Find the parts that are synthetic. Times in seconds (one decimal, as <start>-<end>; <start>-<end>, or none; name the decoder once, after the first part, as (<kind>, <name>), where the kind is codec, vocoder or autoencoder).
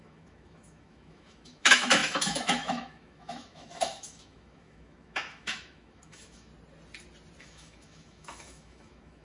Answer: 0.0-6.5 (autoencoder, DAC-VAE); 7.4-9.2